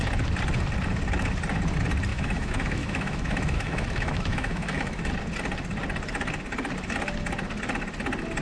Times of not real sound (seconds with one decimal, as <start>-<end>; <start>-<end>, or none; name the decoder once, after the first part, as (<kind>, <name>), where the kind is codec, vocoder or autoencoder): 2.1-5.1 (autoencoder, DAC-VAE)